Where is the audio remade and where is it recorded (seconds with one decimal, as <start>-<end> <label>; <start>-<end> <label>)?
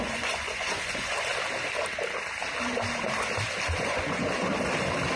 0.0-1.3 remade; 1.3-3.8 recorded; 3.8-4.2 remade; 4.2-5.2 recorded